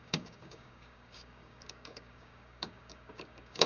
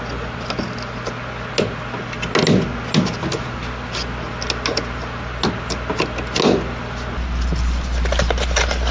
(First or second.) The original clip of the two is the second